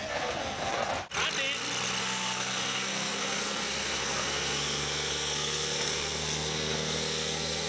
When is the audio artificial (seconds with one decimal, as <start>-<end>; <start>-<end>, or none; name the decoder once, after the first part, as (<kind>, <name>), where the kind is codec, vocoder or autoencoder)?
0.0-0.9 (codec, SNAC); 2.0-7.7